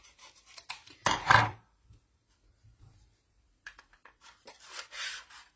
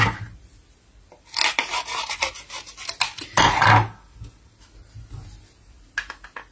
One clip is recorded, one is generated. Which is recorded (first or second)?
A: second